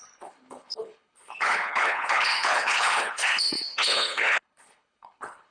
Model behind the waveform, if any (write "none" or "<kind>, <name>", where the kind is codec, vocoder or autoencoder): codec, HILCodec